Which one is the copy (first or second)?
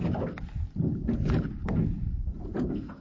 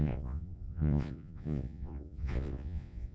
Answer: second